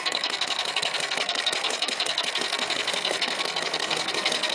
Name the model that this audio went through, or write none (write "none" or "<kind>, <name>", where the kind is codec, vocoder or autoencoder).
codec, SNAC